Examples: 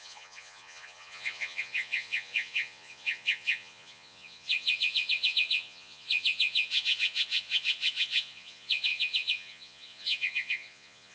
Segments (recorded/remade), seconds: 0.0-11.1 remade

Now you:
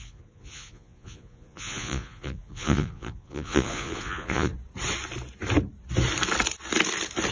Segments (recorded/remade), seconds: 0.0-4.5 remade; 4.5-7.3 recorded

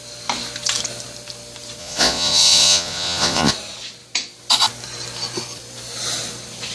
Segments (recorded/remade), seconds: 0.0-1.8 recorded; 1.8-3.5 remade; 3.5-6.7 recorded

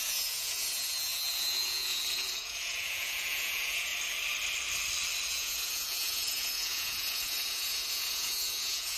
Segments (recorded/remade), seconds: 0.0-3.9 remade; 3.9-5.3 recorded; 5.3-9.0 remade

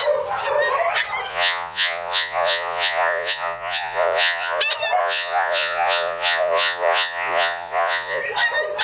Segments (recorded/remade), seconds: 0.0-1.3 recorded; 1.3-4.6 remade; 4.6-5.0 recorded; 5.0-8.2 remade; 8.2-8.8 recorded

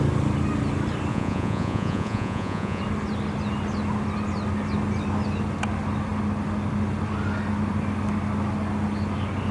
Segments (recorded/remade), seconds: 0.0-1.1 recorded; 1.1-2.8 remade; 2.8-9.5 recorded